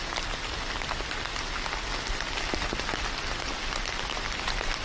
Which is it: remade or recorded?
recorded